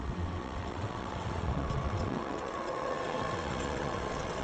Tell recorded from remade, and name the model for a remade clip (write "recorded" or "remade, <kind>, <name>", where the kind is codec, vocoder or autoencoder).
remade, vocoder, WaveNeXt